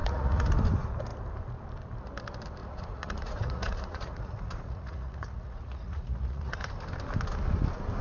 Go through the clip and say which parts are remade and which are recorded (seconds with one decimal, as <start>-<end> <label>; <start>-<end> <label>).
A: 0.0-0.5 remade; 0.5-2.6 recorded; 2.6-6.7 remade; 6.7-8.0 recorded